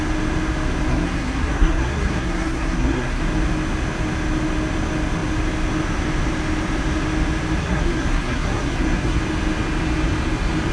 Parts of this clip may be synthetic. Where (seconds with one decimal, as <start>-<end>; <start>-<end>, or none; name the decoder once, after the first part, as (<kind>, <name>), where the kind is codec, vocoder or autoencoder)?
0.9-3.2 (codec, SNAC); 7.6-9.2